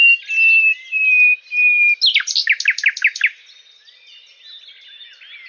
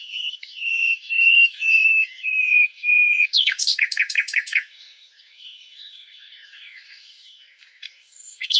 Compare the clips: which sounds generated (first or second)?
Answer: second